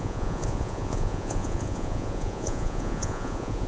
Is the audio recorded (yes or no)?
no